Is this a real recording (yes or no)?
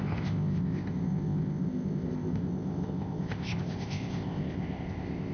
no